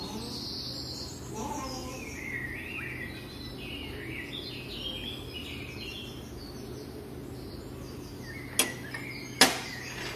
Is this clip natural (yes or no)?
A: yes